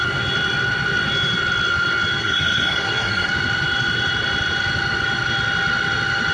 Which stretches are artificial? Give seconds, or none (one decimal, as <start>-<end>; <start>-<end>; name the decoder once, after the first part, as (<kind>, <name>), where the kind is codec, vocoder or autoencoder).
2.2-3.3 (codec, SNAC)